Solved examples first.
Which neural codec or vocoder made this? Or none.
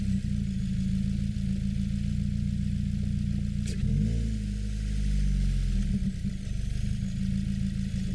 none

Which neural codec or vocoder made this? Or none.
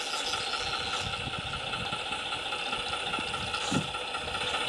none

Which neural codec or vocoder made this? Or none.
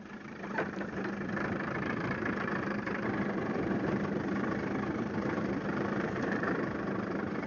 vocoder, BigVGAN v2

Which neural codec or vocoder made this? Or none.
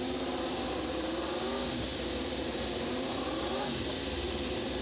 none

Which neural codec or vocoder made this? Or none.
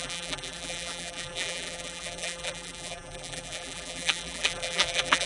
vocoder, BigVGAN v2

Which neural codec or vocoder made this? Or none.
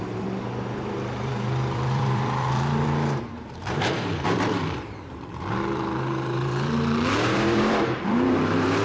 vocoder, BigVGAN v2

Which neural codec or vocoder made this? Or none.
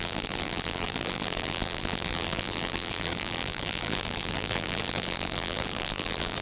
vocoder, BigVGAN v2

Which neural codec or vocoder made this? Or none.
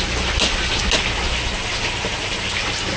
none